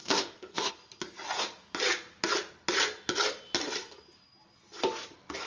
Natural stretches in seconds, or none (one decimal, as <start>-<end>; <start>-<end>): 0.7-5.5